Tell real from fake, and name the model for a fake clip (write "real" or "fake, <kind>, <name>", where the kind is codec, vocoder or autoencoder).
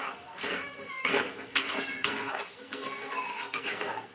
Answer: fake, codec, SNAC